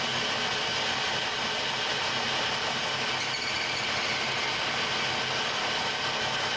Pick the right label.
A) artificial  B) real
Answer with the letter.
B